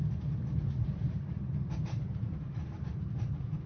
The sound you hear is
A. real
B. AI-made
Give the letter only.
B